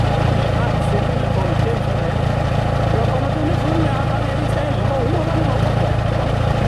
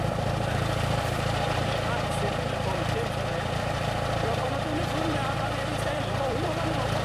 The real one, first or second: first